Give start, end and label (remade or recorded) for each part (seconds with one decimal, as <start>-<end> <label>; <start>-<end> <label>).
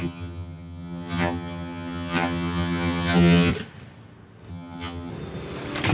0.0-3.5 remade; 3.5-4.5 recorded; 4.5-5.1 remade; 5.1-5.9 recorded